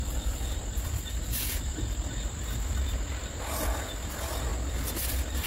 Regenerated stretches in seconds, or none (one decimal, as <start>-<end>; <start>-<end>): 0.0-1.7; 2.7-4.5; 5.0-5.5